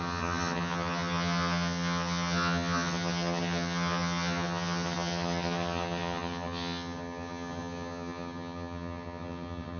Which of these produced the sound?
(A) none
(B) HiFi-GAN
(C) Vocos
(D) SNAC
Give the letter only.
B